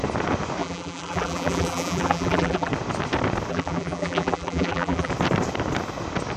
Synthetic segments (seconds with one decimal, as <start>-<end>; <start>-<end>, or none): 0.6-2.7; 3.5-5.1